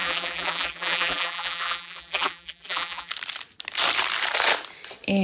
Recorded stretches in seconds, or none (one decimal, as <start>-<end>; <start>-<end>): 3.1-5.2